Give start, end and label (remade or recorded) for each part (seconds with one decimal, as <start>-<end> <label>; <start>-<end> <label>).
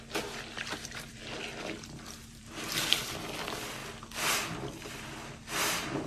0.0-1.2 remade; 1.2-1.8 recorded; 1.8-3.8 remade; 3.8-4.6 recorded; 4.6-6.1 remade